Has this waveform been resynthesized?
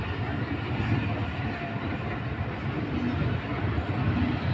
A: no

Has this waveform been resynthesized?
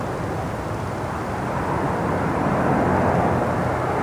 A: no